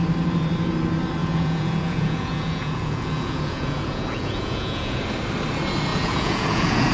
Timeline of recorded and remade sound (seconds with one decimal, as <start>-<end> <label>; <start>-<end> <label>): 0.0-1.2 recorded; 1.2-5.0 remade; 5.0-5.9 recorded; 5.9-6.9 remade